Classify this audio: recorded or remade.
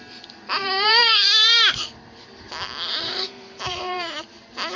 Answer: remade